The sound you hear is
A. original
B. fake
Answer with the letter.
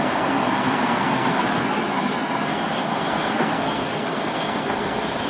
B